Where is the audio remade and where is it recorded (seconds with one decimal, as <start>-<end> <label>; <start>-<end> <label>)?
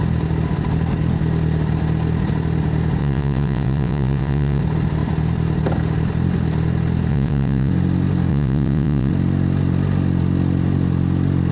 0.0-3.0 recorded; 3.0-4.6 remade; 4.6-7.1 recorded; 7.1-7.7 remade; 7.7-8.3 recorded; 8.3-9.1 remade; 9.1-11.5 recorded